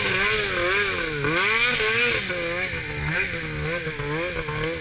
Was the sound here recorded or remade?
recorded